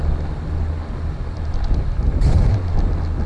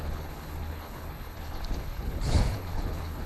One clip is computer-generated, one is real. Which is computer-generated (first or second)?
second